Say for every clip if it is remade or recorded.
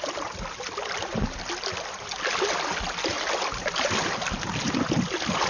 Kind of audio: recorded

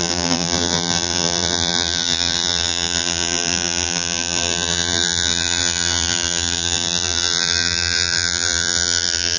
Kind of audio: remade